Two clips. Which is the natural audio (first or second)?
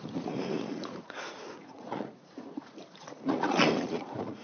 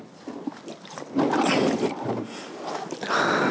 second